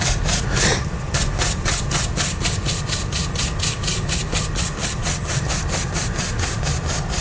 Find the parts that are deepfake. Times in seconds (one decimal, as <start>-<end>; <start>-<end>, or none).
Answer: 4.8-5.4